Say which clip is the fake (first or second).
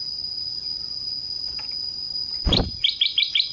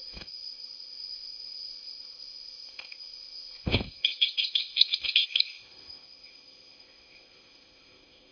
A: second